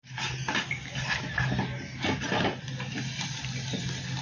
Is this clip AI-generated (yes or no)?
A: no